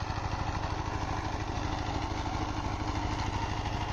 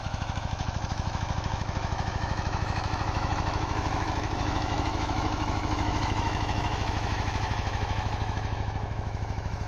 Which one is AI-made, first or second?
second